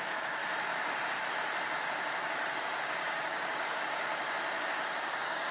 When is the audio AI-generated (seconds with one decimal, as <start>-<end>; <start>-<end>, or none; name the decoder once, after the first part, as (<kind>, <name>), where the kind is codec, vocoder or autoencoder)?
0.0-0.4 (codec, DAC); 2.6-4.1; 4.6-5.5